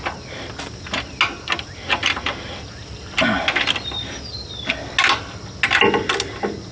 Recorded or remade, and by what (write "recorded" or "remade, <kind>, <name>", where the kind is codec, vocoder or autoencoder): recorded